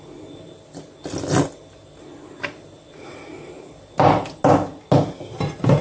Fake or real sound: real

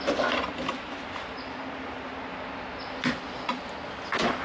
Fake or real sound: real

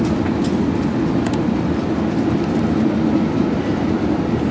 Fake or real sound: real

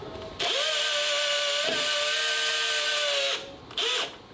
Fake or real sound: real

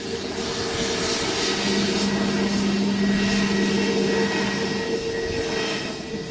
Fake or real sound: real